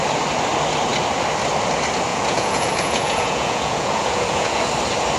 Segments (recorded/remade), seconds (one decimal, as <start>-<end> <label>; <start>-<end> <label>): 0.0-2.1 recorded; 2.1-4.7 remade; 4.7-5.2 recorded